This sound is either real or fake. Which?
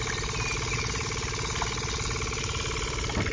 real